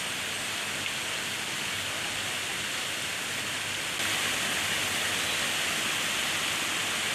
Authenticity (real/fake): real